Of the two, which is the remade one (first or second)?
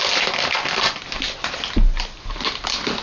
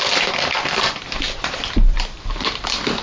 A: second